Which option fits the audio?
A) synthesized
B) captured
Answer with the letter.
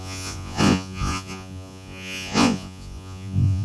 A